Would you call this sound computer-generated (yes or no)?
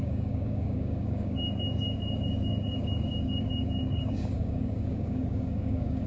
yes